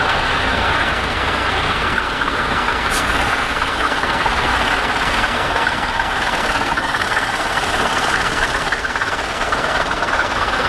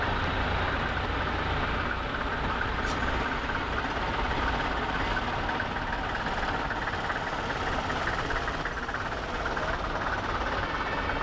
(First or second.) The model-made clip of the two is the first